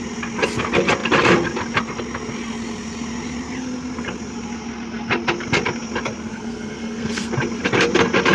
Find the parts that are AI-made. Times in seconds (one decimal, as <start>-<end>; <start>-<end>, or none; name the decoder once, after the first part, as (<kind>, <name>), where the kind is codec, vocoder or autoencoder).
6.3-7.3 (codec, SNAC)